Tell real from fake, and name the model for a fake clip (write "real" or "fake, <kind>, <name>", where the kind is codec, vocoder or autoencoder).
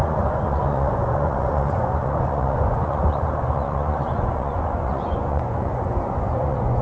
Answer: fake, vocoder, Vocos